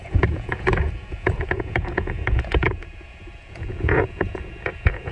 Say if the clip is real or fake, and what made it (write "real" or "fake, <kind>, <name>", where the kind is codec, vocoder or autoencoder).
fake, vocoder, Vocos